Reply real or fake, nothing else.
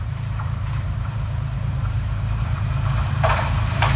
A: fake